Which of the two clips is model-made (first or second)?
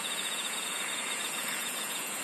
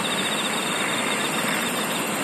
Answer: first